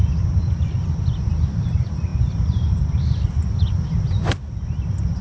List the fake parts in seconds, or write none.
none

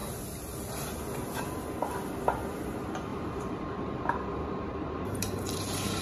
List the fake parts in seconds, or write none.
0.0-1.0 (vocoder, BigVGAN v2); 3.1-6.0

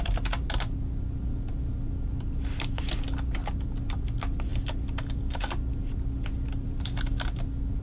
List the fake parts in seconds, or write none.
none

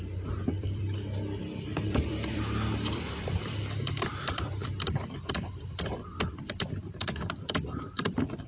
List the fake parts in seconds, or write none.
0.0-3.6 (vocoder, BigVGAN v2); 4.1-8.5

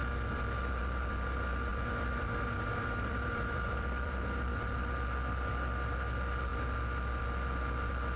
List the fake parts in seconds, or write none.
1.7-4.5 (vocoder, BigVGAN v2)

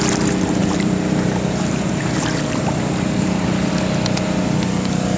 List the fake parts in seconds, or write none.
0.6-3.7 (vocoder, BigVGAN v2)

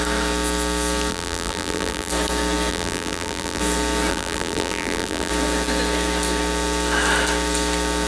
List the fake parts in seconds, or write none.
1.1-2.1 (vocoder, BigVGAN v2); 2.7-3.6; 4.1-5.3